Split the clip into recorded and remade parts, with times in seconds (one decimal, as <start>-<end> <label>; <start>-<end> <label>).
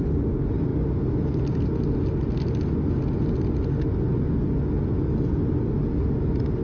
0.0-6.6 recorded